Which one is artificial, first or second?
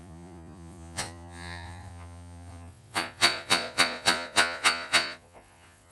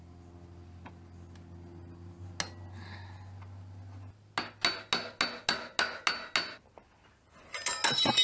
first